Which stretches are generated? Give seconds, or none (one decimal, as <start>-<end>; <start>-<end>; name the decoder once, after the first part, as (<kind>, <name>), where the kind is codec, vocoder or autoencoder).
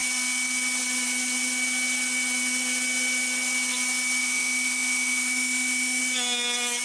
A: 4.2-6.0 (autoencoder, DAC-VAE)